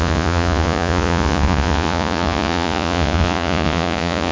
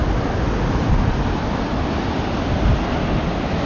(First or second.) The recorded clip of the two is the second